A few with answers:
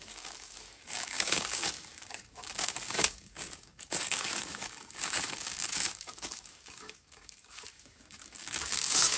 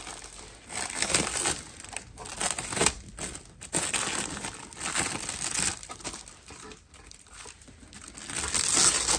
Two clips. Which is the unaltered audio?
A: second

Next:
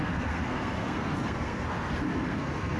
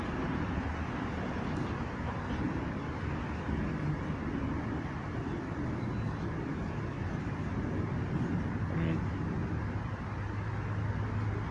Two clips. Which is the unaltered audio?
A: second